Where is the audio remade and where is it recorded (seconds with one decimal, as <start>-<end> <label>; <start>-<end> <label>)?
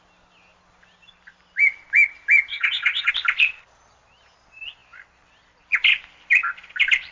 0.0-2.5 recorded; 2.5-3.1 remade; 3.1-7.1 recorded